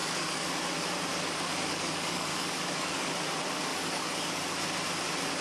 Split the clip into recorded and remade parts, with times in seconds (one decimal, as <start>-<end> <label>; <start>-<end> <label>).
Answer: 0.0-0.6 remade; 0.6-1.1 recorded; 1.1-3.1 remade; 3.1-3.7 recorded; 3.7-4.4 remade; 4.4-5.4 recorded